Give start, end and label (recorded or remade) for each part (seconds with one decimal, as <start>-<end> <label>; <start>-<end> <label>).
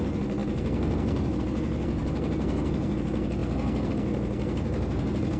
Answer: 0.0-5.4 remade